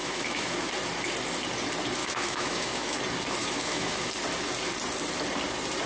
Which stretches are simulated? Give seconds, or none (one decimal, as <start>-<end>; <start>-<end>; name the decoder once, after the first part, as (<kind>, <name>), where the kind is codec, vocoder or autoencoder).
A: 0.0-0.7 (autoencoder, DAC-VAE); 2.0-3.0; 3.4-4.1